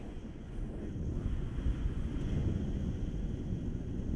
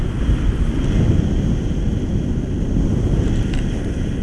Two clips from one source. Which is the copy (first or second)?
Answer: first